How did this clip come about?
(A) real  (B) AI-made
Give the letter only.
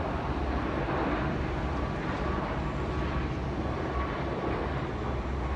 A